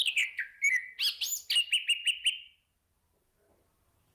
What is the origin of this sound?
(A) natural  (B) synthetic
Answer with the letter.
A